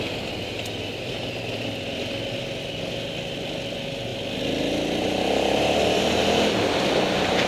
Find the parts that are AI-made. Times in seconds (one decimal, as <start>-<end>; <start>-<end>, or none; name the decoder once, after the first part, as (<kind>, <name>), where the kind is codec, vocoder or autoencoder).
none